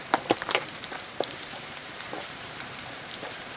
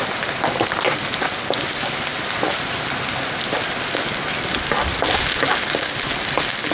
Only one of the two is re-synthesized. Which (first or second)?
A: first